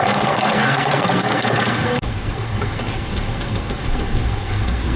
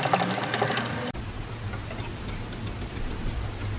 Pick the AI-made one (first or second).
first